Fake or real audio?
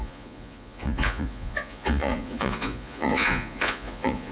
fake